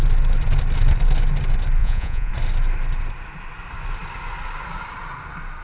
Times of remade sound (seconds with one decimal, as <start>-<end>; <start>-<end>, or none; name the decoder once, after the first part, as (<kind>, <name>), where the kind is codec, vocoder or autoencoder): 1.8-2.3 (vocoder, Vocos)